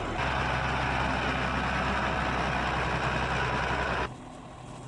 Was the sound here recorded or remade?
recorded